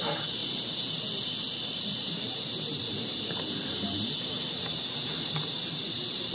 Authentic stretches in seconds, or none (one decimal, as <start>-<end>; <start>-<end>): none